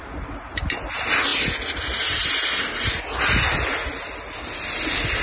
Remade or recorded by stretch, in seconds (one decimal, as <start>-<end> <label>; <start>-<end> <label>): 0.0-5.2 recorded

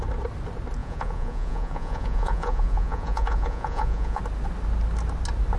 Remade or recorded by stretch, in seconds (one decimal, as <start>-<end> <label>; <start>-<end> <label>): 0.0-0.8 recorded; 0.8-4.2 remade; 4.2-5.6 recorded

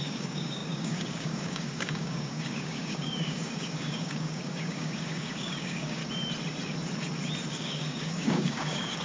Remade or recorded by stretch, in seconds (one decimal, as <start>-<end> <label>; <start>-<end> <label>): 0.0-6.0 remade; 6.0-7.5 recorded; 7.5-9.0 remade

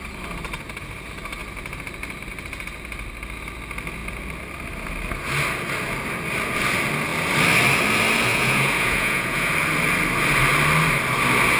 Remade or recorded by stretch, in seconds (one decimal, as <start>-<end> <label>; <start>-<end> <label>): 0.0-8.3 recorded; 8.3-9.5 remade; 9.5-11.6 recorded

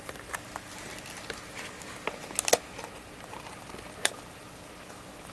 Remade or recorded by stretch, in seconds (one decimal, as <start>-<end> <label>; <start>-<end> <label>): 0.0-0.9 remade; 0.9-4.1 recorded; 4.1-5.3 remade

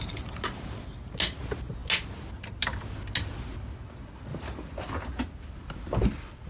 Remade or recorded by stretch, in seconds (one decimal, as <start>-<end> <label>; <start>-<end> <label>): 0.0-6.5 recorded

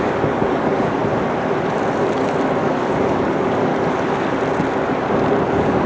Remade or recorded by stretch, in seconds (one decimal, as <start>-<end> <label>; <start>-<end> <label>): 0.0-1.0 remade; 1.0-2.6 recorded; 2.6-3.7 remade; 3.7-5.5 recorded; 5.5-5.9 remade

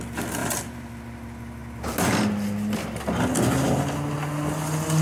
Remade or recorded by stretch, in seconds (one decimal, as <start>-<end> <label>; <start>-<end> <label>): 0.0-0.4 recorded; 0.4-1.0 remade; 1.0-5.0 recorded